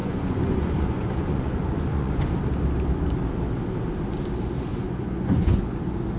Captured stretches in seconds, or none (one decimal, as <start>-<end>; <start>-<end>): 2.3-4.7; 5.6-6.2